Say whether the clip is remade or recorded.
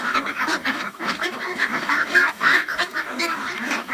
remade